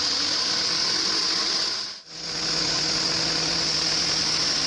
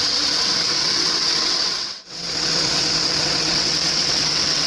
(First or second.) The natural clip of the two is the first